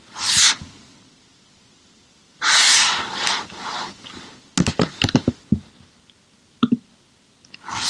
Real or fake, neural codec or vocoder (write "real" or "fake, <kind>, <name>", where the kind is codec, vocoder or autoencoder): real